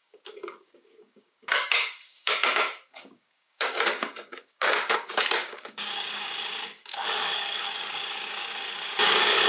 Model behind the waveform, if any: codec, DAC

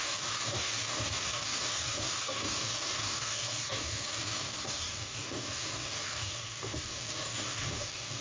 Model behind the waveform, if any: codec, DAC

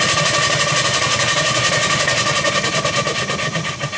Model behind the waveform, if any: none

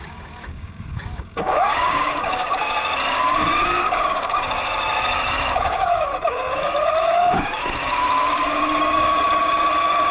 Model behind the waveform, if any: codec, DAC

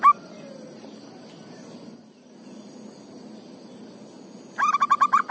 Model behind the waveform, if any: none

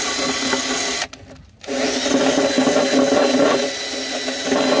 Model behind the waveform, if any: none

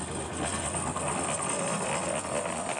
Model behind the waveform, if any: none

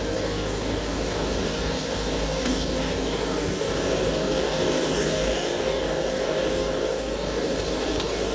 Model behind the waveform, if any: codec, DAC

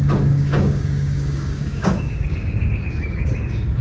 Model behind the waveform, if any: codec, DAC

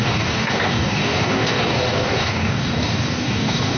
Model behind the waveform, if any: codec, DAC